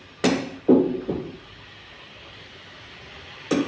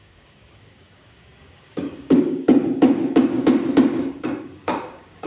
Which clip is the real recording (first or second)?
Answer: first